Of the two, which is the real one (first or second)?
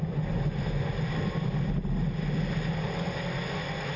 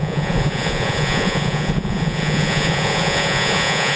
first